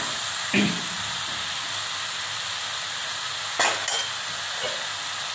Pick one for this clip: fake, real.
real